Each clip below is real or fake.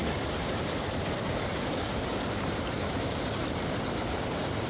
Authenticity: fake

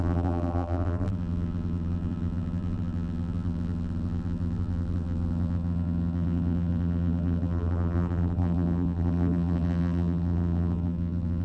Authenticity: fake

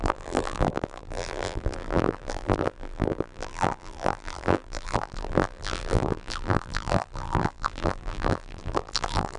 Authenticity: fake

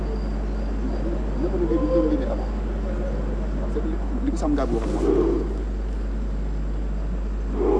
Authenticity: real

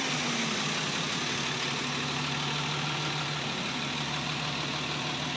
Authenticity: real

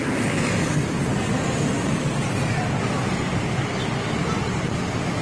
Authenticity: real